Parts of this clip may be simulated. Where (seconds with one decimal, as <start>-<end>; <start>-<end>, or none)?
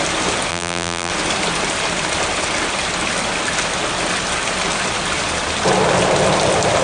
0.5-1.1